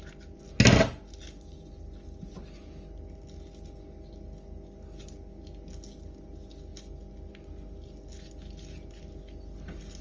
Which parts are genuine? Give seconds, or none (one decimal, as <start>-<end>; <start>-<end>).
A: 0.0-10.0